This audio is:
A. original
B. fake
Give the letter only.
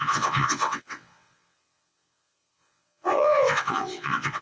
B